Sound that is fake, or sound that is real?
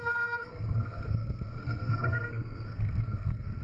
fake